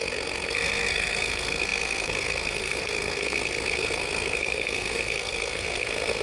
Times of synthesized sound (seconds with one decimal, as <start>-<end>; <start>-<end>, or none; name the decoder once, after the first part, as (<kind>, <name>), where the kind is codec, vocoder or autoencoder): 0.0-6.2 (codec, SNAC)